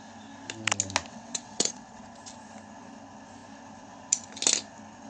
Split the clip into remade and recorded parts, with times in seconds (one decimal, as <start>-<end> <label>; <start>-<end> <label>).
0.0-1.1 recorded; 1.1-2.0 remade; 2.0-5.1 recorded